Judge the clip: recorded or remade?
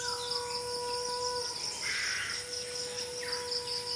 recorded